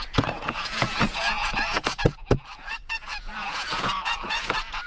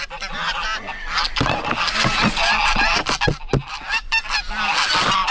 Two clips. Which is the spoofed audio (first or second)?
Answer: first